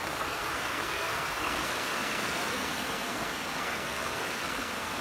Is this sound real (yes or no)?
no